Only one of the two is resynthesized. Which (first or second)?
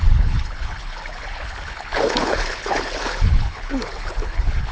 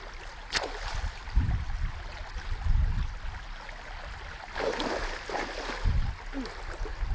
first